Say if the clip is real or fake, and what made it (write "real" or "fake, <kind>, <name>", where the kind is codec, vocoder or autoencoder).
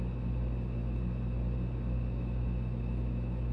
real